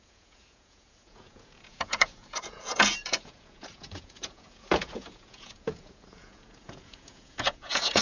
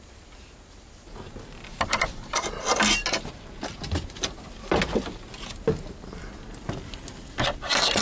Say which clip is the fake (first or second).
first